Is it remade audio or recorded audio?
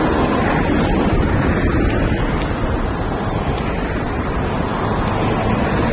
recorded